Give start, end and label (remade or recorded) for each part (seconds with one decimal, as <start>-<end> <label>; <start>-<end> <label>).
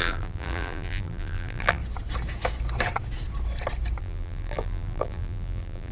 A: 0.0-1.8 remade; 1.8-4.0 recorded; 4.0-5.9 remade